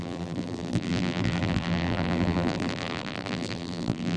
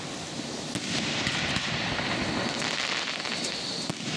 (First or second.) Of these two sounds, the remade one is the first